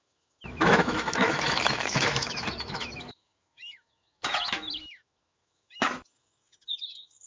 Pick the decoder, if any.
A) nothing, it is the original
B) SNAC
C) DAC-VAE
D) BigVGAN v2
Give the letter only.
C